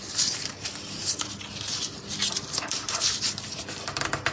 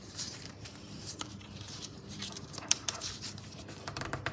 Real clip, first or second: first